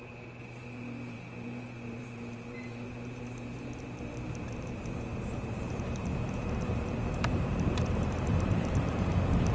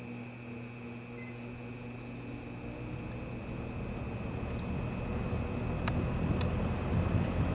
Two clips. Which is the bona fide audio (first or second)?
second